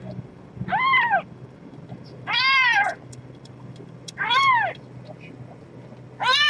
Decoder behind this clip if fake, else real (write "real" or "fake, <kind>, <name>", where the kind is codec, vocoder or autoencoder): real